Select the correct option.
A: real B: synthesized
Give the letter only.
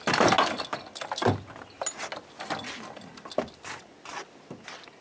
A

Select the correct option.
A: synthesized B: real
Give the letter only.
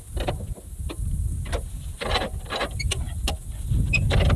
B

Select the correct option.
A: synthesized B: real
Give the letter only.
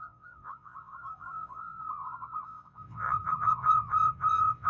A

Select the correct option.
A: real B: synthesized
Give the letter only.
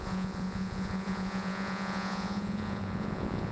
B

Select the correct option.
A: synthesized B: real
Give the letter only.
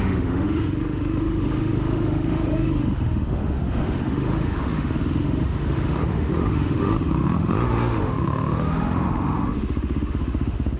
A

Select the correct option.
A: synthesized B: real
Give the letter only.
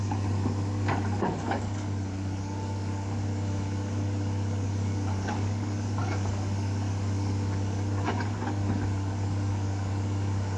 A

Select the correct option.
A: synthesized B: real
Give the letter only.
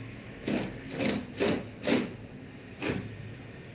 B